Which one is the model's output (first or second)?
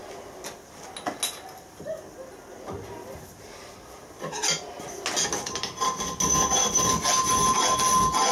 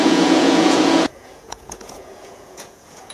second